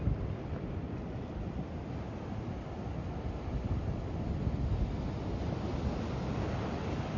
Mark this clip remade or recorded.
recorded